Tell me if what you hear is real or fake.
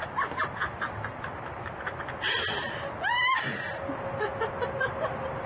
real